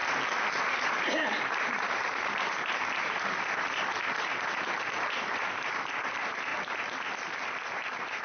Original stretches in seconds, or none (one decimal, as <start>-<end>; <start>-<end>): 6.5-7.7